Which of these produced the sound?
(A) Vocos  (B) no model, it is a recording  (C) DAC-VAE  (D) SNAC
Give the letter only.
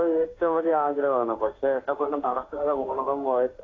C